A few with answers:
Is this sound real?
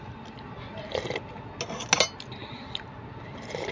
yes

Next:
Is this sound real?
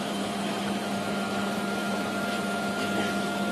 no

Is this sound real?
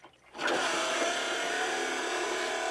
yes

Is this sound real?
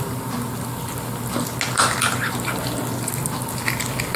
yes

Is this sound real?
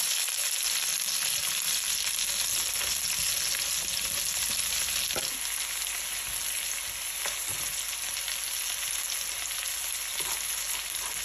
yes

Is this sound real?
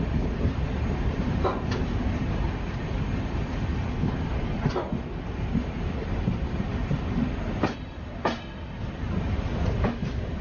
yes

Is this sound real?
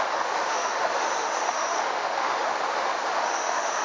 no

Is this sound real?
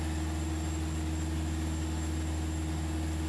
yes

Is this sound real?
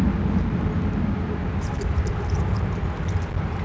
yes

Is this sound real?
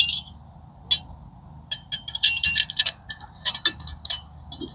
yes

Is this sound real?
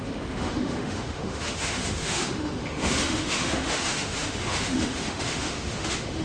no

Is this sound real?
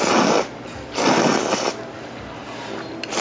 yes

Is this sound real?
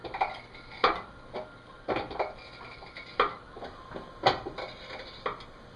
yes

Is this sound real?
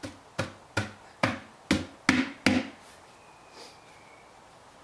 yes